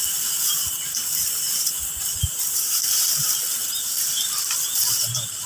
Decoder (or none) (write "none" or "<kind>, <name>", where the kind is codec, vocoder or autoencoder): none